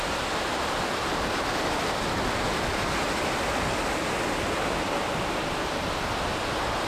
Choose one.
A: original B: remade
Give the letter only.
A